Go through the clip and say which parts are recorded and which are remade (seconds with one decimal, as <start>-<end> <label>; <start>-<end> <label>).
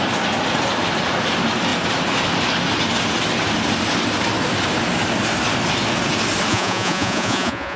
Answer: 0.0-6.5 recorded; 6.5-7.8 remade